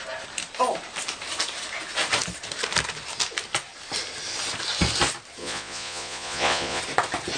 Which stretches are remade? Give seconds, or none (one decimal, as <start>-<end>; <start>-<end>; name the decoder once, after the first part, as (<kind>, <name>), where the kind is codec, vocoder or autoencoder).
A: 5.4-6.8 (vocoder, Vocos)